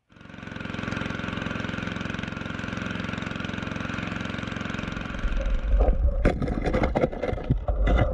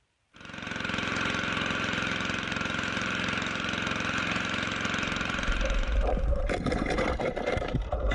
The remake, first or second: second